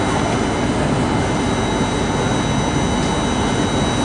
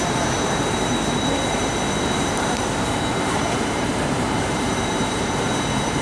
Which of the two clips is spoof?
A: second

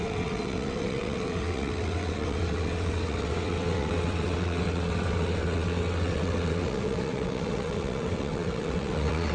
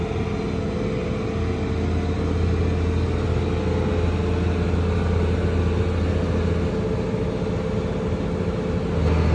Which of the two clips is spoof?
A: first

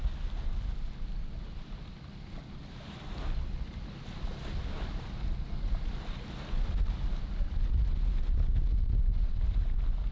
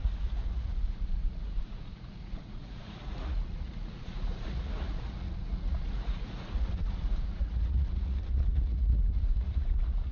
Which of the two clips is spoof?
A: second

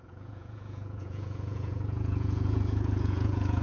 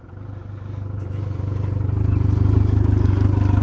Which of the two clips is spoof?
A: first